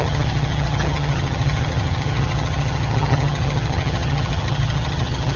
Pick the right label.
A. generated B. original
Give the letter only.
A